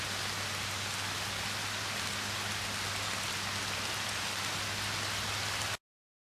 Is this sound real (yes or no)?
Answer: yes